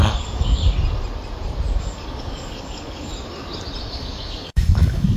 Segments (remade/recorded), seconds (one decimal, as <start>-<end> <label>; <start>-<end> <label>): 0.0-0.6 remade; 0.6-1.8 recorded; 1.8-3.1 remade; 3.1-3.9 recorded; 3.9-5.2 remade